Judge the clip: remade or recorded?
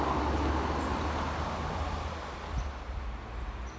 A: recorded